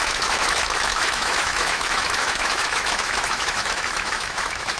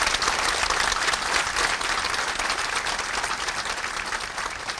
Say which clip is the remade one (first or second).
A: first